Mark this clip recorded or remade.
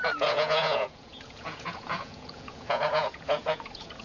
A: remade